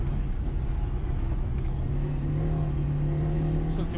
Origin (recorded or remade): recorded